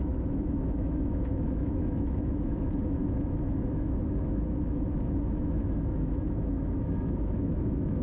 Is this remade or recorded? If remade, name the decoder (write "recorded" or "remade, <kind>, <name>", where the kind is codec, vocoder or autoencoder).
remade, autoencoder, DAC-VAE